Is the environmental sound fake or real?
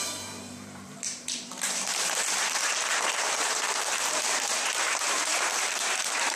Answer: fake